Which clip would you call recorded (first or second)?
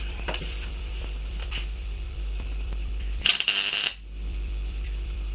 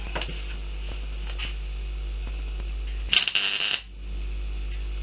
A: second